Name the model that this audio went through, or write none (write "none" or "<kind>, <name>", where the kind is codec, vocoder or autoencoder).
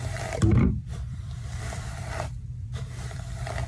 vocoder, BigVGAN v2